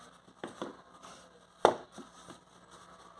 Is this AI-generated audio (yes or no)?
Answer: no